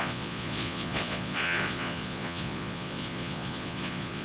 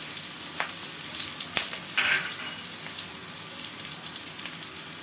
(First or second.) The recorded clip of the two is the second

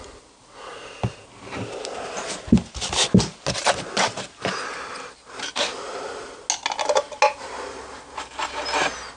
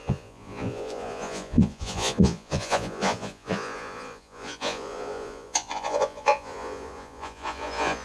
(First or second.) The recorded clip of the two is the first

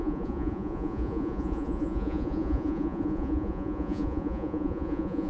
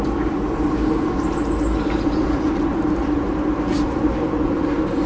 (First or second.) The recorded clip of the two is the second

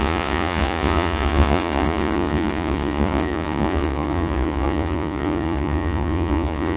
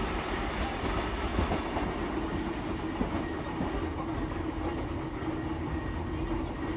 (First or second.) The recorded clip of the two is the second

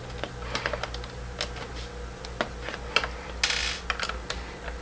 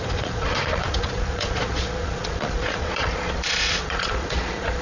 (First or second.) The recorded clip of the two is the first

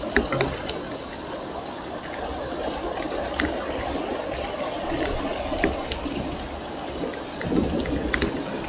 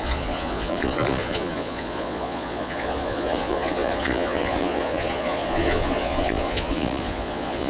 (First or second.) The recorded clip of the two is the first